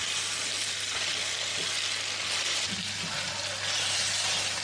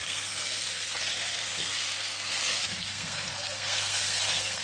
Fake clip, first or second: second